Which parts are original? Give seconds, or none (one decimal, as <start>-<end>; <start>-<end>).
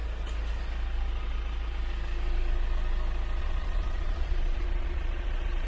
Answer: 0.0-3.4